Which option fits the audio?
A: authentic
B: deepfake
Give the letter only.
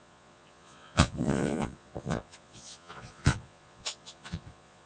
B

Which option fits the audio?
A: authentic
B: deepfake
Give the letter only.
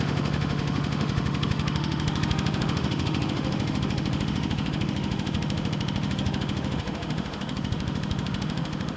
B